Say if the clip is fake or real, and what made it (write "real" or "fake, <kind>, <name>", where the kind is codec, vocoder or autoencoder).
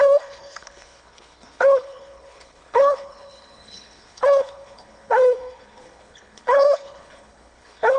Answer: fake, codec, HILCodec